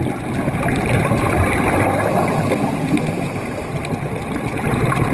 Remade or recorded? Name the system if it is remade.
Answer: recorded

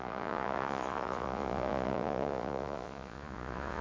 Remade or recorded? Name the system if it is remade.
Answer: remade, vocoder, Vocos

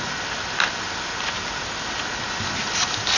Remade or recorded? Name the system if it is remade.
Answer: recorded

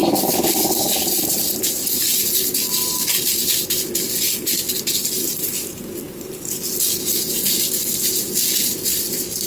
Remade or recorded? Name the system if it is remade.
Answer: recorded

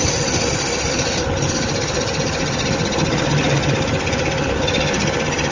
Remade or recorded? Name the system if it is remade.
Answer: recorded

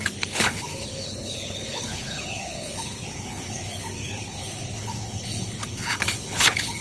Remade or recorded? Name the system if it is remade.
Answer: remade, codec, HILCodec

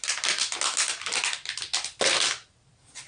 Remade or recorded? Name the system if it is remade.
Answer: recorded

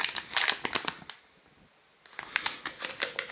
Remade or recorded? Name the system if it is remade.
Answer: recorded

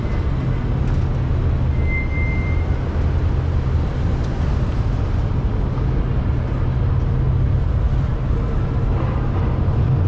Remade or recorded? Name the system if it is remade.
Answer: recorded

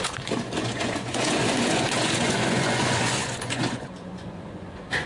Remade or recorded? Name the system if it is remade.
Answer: remade, vocoder, Vocos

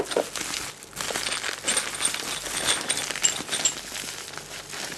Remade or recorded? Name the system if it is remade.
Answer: recorded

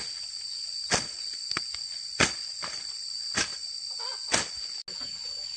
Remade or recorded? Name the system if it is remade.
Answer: recorded